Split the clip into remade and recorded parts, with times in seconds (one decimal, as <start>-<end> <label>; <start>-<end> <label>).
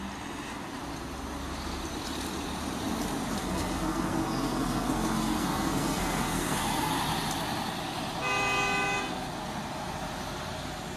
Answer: 0.0-3.4 recorded; 3.4-6.9 remade; 6.9-11.0 recorded